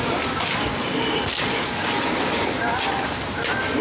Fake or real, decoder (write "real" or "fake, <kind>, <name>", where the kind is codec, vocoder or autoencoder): real